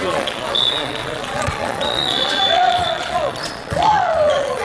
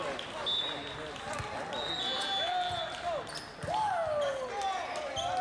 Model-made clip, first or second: first